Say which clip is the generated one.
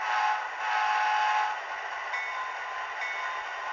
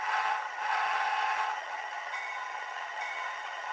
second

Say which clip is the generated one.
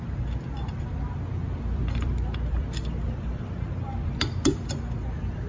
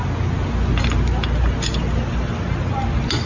first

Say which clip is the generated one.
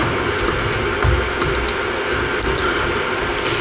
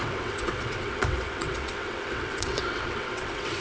second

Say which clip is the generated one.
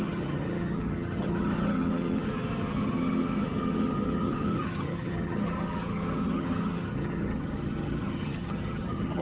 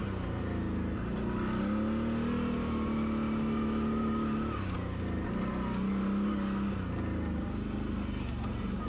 first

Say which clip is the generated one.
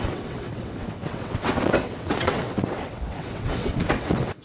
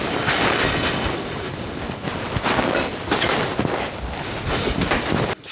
first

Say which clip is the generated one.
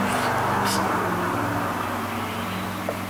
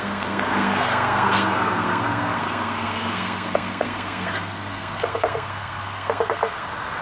second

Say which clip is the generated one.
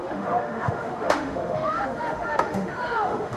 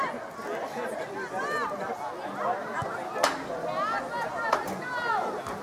first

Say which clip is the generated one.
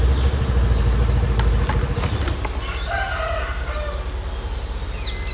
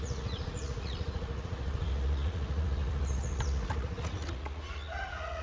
second